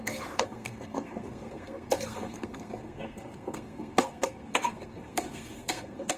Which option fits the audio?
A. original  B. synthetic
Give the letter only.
B